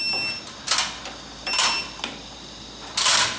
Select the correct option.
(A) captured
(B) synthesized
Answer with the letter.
A